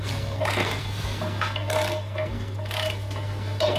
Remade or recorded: remade